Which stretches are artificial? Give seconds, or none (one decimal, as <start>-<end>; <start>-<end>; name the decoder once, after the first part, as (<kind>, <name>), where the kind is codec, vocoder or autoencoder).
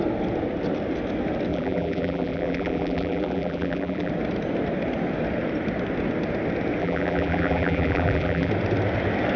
1.5-4.1 (vocoder, BigVGAN v2); 6.8-8.5